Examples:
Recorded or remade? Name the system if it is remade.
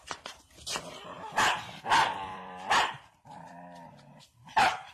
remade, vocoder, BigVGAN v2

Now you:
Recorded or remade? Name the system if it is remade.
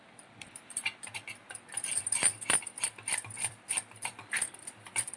remade, vocoder, BigVGAN v2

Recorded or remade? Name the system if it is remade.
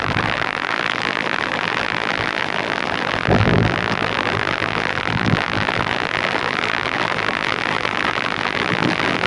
remade, vocoder, BigVGAN v2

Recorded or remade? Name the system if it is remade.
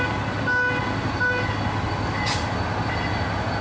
recorded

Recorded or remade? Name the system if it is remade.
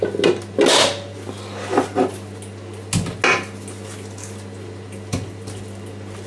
recorded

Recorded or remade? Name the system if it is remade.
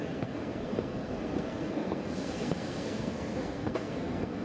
remade, codec, SNAC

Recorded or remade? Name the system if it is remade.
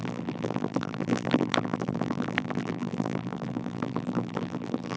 remade, vocoder, BigVGAN v2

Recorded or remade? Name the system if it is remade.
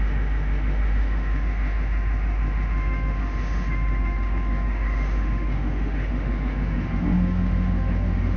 remade, autoencoder, DAC-VAE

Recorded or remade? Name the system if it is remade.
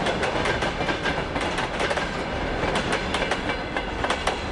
recorded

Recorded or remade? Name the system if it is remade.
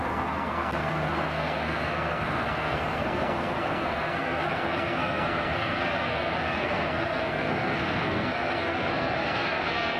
remade, codec, SNAC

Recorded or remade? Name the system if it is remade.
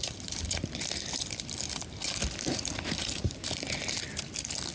remade, vocoder, BigVGAN v2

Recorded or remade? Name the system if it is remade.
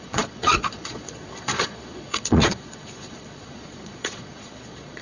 remade, vocoder, Vocos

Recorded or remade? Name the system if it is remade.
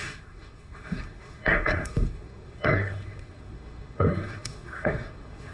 remade, codec, SNAC